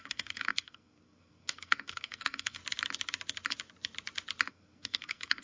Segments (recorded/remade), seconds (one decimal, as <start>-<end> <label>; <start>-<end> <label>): 0.0-2.6 remade; 2.6-4.5 recorded; 4.5-5.4 remade